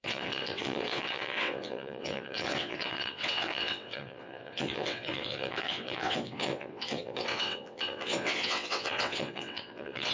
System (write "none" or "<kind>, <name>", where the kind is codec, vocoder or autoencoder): vocoder, WaveNeXt